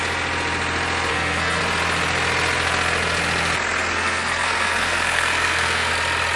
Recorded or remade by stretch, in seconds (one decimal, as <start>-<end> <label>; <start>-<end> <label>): 0.0-1.1 recorded; 1.1-1.6 remade; 1.6-3.8 recorded; 3.8-5.9 remade; 5.9-6.4 recorded